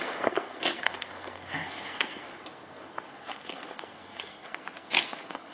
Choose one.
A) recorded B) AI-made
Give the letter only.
B